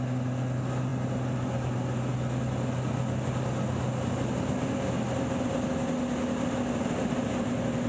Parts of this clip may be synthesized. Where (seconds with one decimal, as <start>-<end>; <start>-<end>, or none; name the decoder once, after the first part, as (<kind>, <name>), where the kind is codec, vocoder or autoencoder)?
none